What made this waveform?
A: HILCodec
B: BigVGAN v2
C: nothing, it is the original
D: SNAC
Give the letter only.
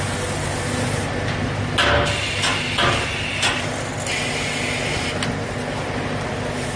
C